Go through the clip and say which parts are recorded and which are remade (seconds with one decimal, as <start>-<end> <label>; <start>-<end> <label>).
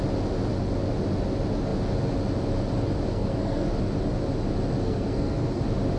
0.0-3.1 recorded; 3.1-3.7 remade; 3.7-4.8 recorded; 4.8-5.6 remade; 5.6-6.0 recorded